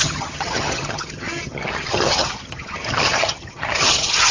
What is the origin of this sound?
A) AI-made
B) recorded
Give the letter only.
A